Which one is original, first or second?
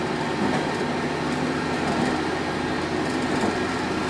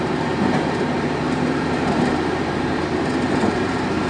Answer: first